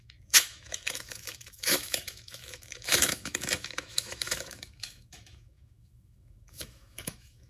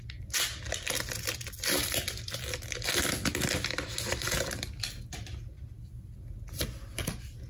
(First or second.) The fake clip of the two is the first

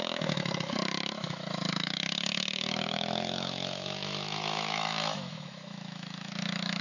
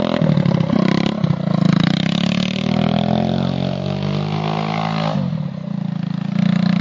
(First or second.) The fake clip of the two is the first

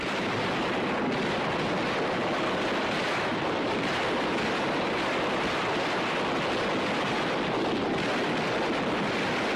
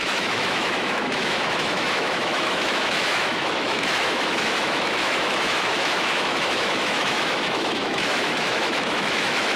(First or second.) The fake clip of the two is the second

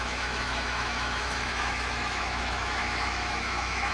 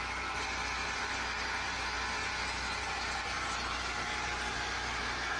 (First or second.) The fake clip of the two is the first